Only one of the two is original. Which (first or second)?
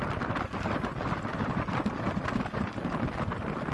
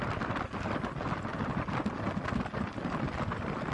second